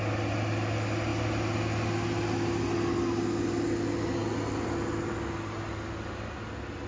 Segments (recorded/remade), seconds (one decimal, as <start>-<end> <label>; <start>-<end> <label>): 0.0-6.9 recorded